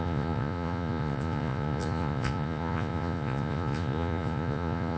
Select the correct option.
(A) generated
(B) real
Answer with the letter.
A